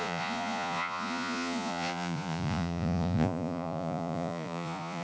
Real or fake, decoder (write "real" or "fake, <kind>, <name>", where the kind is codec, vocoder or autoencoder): fake, vocoder, Vocos